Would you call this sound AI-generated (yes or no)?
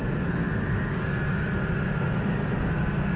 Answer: no